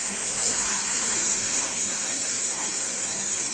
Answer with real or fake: fake